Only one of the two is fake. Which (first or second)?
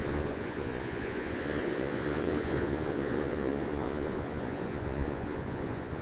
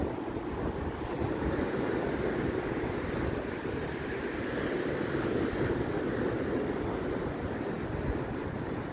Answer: first